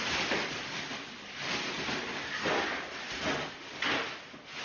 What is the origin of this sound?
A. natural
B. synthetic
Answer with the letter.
A